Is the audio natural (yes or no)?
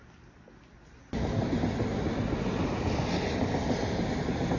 yes